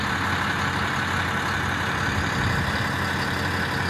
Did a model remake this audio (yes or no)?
no